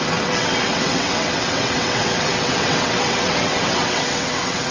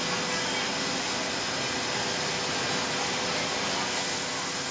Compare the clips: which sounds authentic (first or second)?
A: second